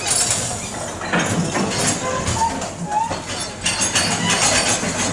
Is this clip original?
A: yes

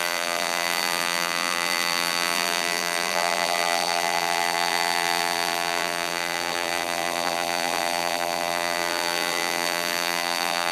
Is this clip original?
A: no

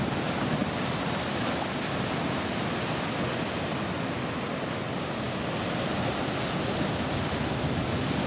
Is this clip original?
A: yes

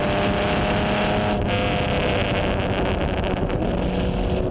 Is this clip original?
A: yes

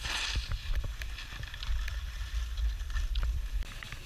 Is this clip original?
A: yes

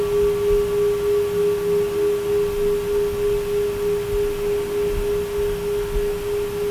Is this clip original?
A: yes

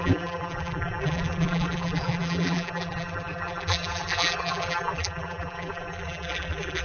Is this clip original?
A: no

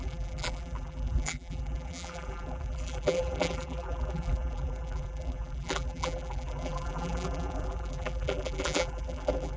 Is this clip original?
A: no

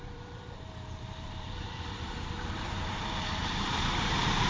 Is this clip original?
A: no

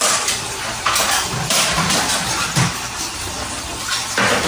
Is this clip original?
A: no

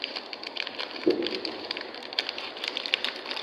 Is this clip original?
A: no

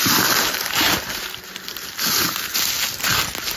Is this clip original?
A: yes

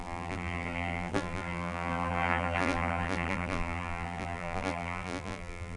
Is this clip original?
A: no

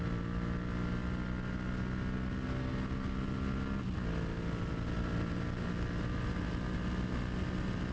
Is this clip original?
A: yes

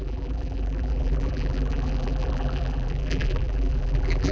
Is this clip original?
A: no